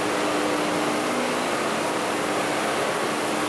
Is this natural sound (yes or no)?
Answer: yes